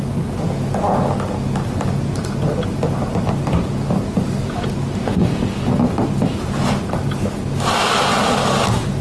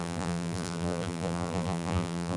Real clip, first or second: first